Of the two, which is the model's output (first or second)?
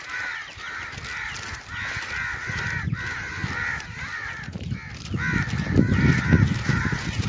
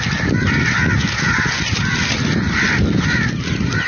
second